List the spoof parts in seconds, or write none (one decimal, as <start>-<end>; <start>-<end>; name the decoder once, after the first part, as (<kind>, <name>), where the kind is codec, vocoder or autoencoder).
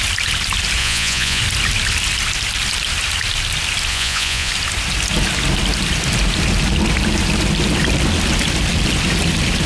0.8-1.4 (vocoder, Vocos); 3.9-4.5